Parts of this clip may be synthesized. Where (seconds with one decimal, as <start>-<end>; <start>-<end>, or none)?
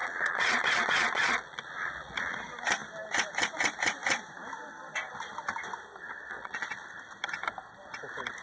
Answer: 0.0-2.4; 6.2-6.8